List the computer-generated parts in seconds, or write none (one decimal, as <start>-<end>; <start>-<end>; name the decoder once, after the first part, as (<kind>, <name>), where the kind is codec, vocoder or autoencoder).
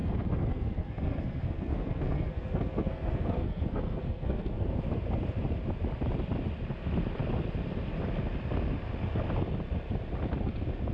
0.0-4.8 (codec, SNAC)